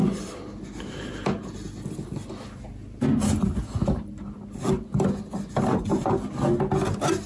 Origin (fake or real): real